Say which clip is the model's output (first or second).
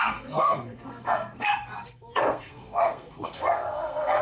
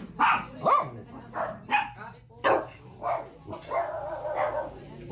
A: first